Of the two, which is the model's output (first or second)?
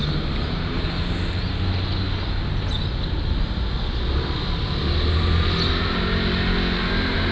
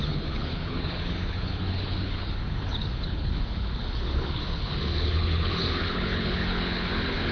second